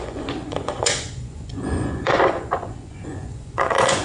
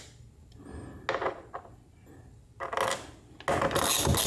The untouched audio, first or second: second